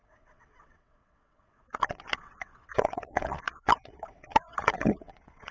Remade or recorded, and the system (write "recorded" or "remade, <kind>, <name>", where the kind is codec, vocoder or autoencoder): remade, vocoder, WaveNeXt